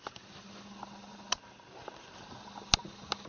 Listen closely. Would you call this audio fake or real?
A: real